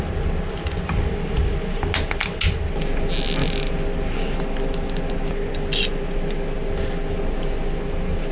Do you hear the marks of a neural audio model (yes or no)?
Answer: no